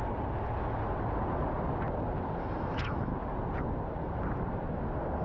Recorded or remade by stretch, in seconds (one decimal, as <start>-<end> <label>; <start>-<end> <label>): 0.0-2.4 recorded; 2.4-3.1 remade; 3.1-5.2 recorded

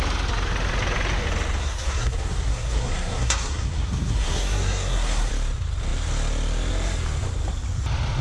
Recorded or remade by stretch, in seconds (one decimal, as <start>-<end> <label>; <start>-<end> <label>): 0.0-1.6 recorded; 1.6-5.3 remade; 5.3-8.2 recorded